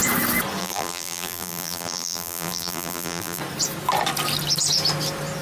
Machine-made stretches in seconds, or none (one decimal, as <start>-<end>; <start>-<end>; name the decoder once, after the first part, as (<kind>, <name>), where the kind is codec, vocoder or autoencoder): 0.6-3.4 (vocoder, BigVGAN v2)